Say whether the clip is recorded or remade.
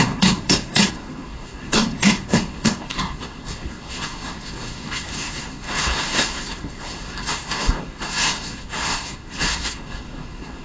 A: remade